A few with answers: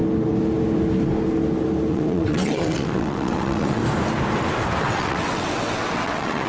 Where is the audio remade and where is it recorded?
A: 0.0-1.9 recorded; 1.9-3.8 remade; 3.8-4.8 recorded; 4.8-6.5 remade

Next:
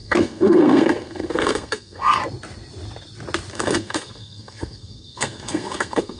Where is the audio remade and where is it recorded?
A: 0.0-2.2 remade; 2.2-3.5 recorded; 3.5-6.2 remade

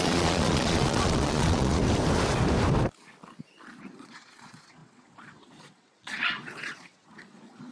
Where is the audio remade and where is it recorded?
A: 0.0-1.8 remade; 1.8-3.8 recorded; 3.8-7.7 remade

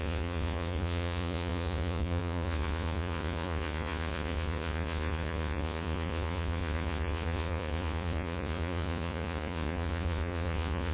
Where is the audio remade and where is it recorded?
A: 0.0-10.9 remade

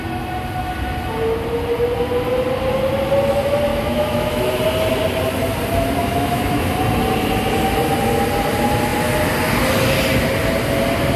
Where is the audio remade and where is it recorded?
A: 0.0-3.7 recorded; 3.7-4.6 remade; 4.6-6.0 recorded; 6.0-6.7 remade; 6.7-11.2 recorded